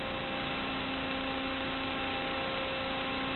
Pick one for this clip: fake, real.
real